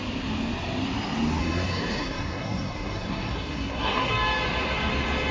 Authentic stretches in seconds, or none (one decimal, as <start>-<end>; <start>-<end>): 0.0-1.4; 4.1-5.3

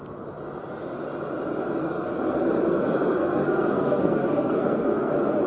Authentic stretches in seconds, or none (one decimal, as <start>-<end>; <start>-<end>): 0.0-1.8; 5.1-5.5

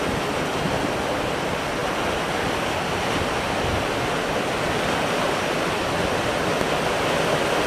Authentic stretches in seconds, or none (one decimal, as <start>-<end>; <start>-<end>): 0.0-7.7